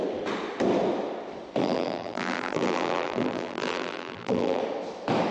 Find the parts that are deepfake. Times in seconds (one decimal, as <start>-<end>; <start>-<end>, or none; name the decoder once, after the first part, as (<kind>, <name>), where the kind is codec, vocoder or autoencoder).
1.6-4.6 (vocoder, BigVGAN v2)